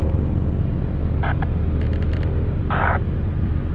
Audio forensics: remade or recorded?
recorded